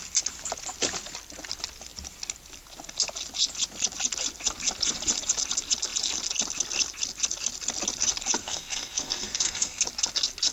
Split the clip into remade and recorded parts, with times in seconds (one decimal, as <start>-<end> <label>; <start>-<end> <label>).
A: 0.0-8.4 recorded; 8.4-9.8 remade; 9.8-10.5 recorded